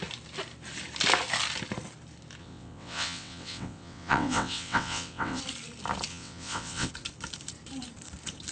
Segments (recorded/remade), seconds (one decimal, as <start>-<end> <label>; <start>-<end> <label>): 0.0-2.4 recorded; 2.4-5.4 remade; 5.4-6.1 recorded; 6.1-6.9 remade; 6.9-8.5 recorded